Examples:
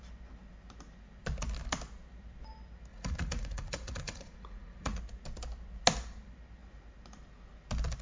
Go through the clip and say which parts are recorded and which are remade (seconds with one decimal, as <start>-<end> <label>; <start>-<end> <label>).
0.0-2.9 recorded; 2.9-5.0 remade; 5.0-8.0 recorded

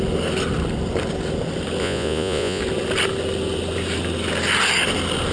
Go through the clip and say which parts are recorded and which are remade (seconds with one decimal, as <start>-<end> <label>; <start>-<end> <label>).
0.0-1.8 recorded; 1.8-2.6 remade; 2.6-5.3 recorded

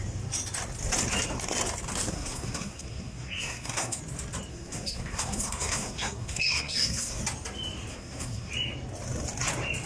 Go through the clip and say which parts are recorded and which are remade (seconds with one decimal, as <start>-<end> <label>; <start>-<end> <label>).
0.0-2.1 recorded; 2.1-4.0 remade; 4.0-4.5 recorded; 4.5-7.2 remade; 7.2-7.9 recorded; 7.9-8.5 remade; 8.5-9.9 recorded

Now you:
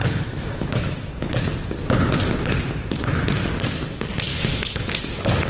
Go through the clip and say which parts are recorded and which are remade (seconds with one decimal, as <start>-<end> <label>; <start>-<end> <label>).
0.0-1.3 remade; 1.3-4.3 recorded; 4.3-5.1 remade; 5.1-5.5 recorded

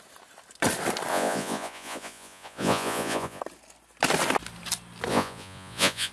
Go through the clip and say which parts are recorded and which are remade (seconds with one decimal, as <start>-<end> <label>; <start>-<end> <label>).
0.0-1.1 recorded; 1.1-3.4 remade; 3.4-5.1 recorded; 5.1-6.1 remade